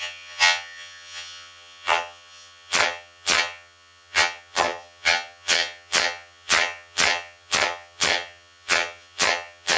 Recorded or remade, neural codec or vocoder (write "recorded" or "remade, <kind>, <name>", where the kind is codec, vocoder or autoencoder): remade, vocoder, HiFi-GAN